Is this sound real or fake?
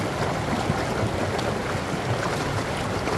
real